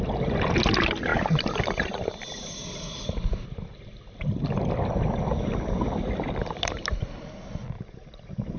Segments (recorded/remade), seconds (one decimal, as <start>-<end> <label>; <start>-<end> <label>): 0.0-1.1 recorded; 1.1-1.8 remade; 1.8-8.6 recorded